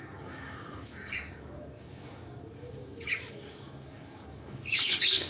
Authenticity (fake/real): fake